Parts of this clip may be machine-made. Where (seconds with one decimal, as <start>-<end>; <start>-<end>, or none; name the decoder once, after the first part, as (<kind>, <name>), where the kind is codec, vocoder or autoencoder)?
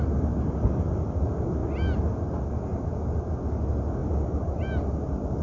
none